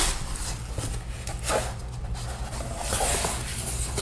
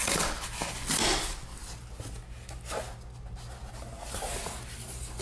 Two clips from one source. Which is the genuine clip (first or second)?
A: second